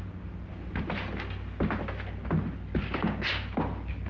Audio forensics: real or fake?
real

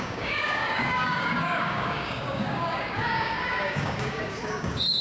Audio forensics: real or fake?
fake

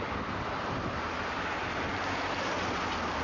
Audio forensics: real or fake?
real